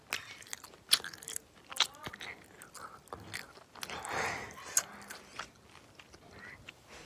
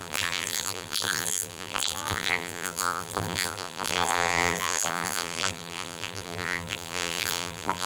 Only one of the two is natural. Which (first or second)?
first